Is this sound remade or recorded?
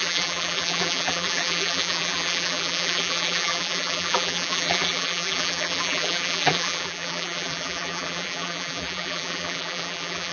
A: remade